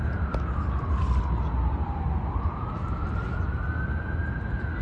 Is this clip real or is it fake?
real